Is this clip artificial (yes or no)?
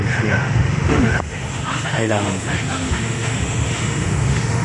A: yes